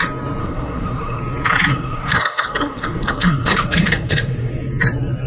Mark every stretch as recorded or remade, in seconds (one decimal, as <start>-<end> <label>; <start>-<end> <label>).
0.0-0.4 recorded; 0.4-1.2 remade; 1.2-1.7 recorded; 1.7-4.5 remade; 4.5-5.3 recorded